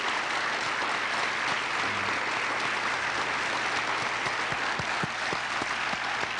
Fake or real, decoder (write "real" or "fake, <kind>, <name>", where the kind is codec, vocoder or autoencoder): real